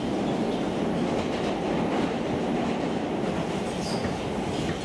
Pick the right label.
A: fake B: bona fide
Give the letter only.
B